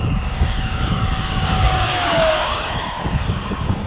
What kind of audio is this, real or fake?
fake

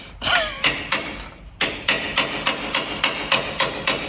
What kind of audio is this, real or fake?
real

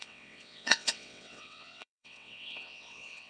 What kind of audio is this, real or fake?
fake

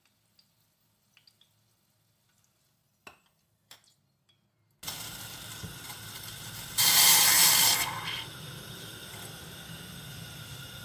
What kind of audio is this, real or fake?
real